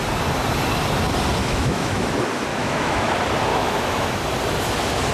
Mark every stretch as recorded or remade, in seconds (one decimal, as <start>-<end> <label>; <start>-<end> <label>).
0.0-1.4 recorded; 1.4-2.1 remade; 2.1-2.5 recorded; 2.5-3.1 remade; 3.1-3.5 recorded; 3.5-4.2 remade; 4.2-5.1 recorded